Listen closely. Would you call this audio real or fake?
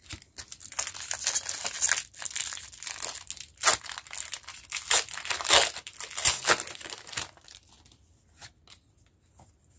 real